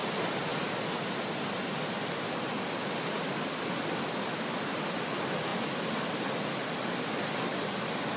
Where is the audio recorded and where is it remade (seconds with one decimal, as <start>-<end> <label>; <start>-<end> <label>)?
0.0-8.2 recorded